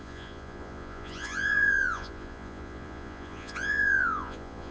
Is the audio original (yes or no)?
no